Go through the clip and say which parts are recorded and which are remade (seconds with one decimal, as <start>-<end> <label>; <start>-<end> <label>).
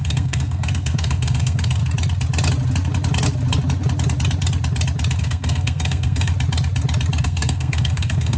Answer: 0.0-1.8 remade; 1.8-5.2 recorded; 5.2-6.3 remade; 6.3-7.2 recorded; 7.2-8.4 remade